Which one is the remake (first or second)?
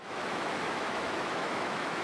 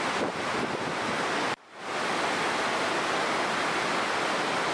first